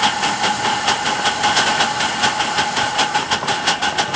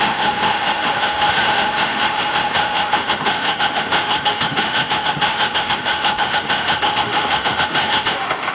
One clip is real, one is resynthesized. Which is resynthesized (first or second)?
second